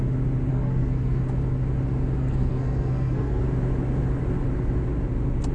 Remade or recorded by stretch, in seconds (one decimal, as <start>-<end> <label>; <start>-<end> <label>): 0.0-0.5 recorded; 0.5-1.2 remade; 1.2-2.2 recorded; 2.2-3.4 remade; 3.4-5.5 recorded